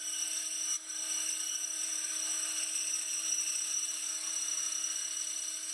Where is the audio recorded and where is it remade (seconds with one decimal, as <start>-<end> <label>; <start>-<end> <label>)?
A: 0.0-5.7 recorded

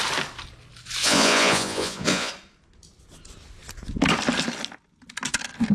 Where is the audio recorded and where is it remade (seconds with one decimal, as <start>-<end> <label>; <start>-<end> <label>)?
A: 0.0-1.0 recorded; 1.0-2.3 remade; 2.3-5.7 recorded

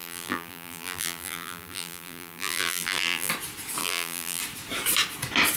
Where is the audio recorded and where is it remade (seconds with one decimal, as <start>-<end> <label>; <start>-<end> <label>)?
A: 0.0-3.3 remade; 3.3-3.8 recorded; 3.8-4.4 remade; 4.4-5.6 recorded

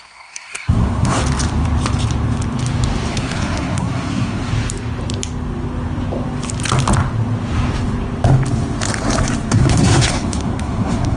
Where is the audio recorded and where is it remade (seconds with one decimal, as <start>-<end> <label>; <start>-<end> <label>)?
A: 0.0-1.2 remade; 1.2-3.1 recorded; 3.1-4.5 remade; 4.5-9.5 recorded; 9.5-11.2 remade

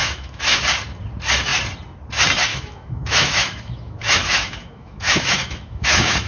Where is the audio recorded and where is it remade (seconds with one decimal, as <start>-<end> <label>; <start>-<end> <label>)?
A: 0.0-0.6 remade; 0.6-2.5 recorded; 2.5-6.3 remade

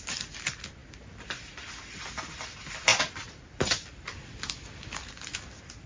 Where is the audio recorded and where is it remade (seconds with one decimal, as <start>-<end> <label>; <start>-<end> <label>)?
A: 0.0-0.8 recorded; 0.8-1.7 remade; 1.7-2.9 recorded; 2.9-3.7 remade; 3.7-5.9 recorded

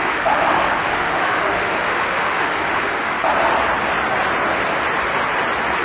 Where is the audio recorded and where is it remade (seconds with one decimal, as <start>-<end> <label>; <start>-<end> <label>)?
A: 0.0-3.2 remade; 3.2-5.8 recorded